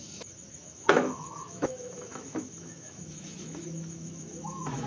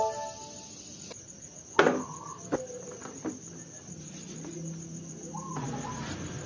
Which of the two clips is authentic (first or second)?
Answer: second